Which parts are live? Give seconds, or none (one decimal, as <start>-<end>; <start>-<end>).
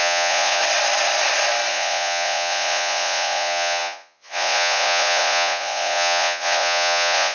0.6-1.7